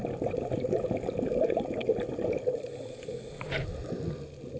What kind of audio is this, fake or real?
real